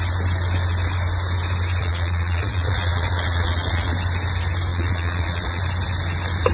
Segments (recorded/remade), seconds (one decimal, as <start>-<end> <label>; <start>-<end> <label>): 0.0-1.8 recorded; 1.8-3.9 remade; 3.9-4.7 recorded; 4.7-5.6 remade; 5.6-6.5 recorded